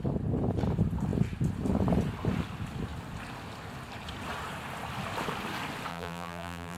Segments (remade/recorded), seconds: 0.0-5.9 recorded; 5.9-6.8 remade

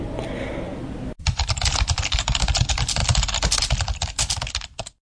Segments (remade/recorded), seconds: 0.0-5.1 recorded

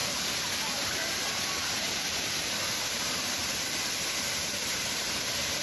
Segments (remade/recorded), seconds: 0.0-1.8 recorded; 1.8-3.4 remade; 3.4-4.3 recorded; 4.3-5.6 remade

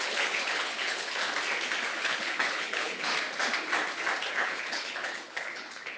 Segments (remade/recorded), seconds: 0.0-1.2 remade; 1.2-2.0 recorded; 2.0-3.1 remade; 3.1-4.3 recorded; 4.3-6.0 remade

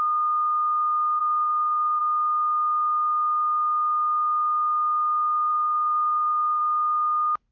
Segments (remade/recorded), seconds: 0.0-1.2 recorded; 1.2-2.0 remade; 2.0-5.5 recorded; 5.5-6.6 remade; 6.6-7.5 recorded